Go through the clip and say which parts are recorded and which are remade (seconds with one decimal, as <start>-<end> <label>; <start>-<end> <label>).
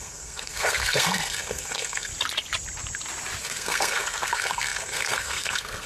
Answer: 0.0-2.1 remade; 2.1-3.4 recorded; 3.4-5.9 remade